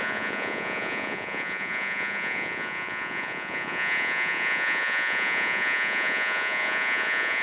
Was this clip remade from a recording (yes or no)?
yes